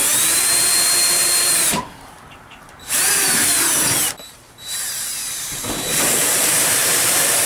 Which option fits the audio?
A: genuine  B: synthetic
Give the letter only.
B